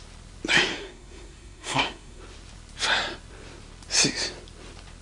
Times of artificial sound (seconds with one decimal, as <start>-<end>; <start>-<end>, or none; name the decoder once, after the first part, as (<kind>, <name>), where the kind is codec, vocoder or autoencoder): 0.7-2.2 (codec, SNAC)

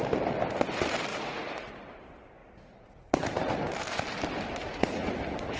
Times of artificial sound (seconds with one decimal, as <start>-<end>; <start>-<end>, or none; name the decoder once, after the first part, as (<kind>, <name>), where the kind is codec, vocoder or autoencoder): 1.1-1.7 (vocoder, Vocos); 2.4-3.6; 4.6-5.6